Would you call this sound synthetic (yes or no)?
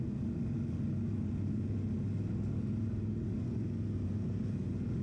no